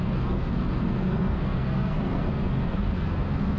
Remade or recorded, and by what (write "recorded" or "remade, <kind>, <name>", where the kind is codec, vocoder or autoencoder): remade, codec, SNAC